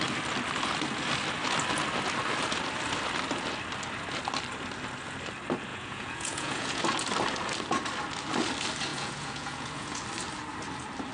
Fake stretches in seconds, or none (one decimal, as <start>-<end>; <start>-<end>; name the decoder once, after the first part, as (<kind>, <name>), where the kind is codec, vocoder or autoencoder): 5.7-6.8 (vocoder, Vocos); 8.9-10.0